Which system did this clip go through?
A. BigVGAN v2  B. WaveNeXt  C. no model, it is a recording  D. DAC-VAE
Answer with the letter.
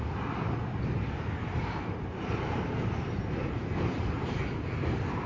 A